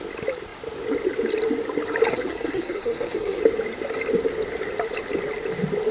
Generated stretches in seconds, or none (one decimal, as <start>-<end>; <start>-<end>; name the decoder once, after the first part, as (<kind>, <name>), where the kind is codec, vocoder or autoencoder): 2.1-3.4 (codec, SNAC)